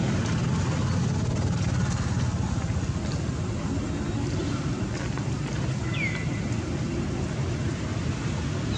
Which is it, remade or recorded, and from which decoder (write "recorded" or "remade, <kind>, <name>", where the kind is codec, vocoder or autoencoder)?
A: recorded